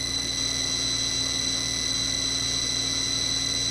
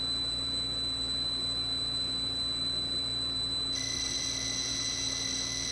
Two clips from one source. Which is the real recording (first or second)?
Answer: first